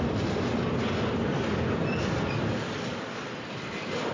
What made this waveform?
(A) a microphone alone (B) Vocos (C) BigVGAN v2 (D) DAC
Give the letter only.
C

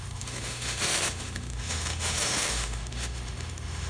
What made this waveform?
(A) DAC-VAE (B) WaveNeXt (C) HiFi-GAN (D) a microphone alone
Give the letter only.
A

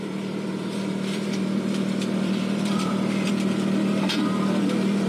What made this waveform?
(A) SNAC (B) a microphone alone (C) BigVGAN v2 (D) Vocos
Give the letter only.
C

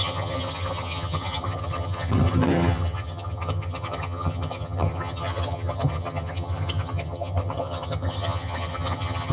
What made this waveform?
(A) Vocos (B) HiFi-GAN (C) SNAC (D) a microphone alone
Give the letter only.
B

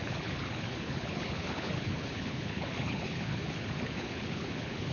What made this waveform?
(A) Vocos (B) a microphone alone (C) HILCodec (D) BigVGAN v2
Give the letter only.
C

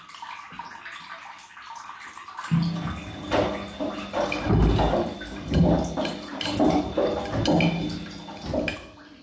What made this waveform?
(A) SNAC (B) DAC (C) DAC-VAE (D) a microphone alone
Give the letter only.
D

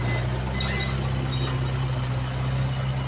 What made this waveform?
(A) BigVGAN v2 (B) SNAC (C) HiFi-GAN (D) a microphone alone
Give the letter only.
D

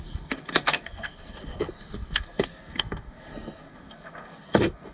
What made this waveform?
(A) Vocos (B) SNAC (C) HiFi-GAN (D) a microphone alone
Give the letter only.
B